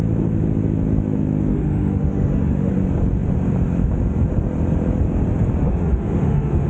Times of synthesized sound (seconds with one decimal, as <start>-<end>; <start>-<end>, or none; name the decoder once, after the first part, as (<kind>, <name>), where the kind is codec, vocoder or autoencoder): 1.5-2.7 (autoencoder, DAC-VAE); 5.6-6.7